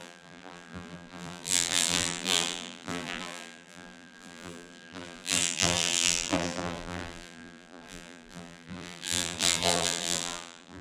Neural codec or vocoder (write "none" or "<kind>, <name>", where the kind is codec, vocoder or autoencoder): vocoder, BigVGAN v2